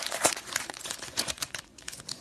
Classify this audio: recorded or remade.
remade